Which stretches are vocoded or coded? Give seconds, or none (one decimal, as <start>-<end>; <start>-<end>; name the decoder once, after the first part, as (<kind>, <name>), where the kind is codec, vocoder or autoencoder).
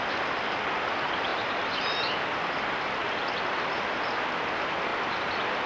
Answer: none